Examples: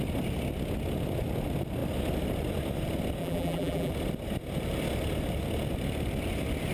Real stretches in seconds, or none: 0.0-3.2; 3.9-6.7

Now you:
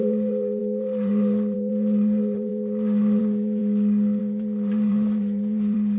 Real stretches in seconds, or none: 3.6-4.2

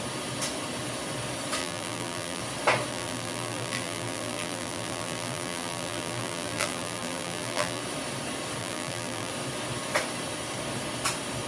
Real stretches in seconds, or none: 0.0-1.6; 2.4-2.9; 7.8-8.6; 9.3-11.5

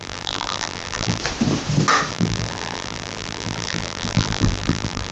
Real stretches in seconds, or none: 1.2-2.1

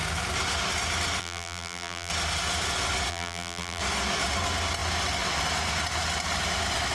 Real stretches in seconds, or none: 0.0-1.2; 2.1-3.1; 3.8-6.9

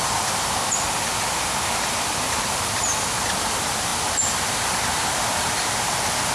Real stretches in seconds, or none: none

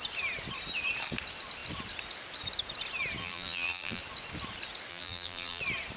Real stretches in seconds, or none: 0.0-3.2; 4.0-4.9; 5.6-6.0